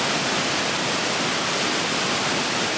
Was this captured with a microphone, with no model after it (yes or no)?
yes